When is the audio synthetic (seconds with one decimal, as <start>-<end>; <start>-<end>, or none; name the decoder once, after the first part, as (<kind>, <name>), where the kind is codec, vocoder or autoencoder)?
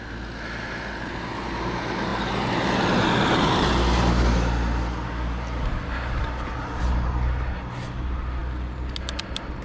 none